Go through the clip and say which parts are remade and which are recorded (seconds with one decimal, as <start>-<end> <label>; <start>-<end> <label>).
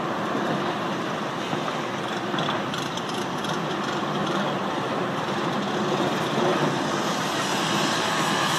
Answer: 0.0-8.6 remade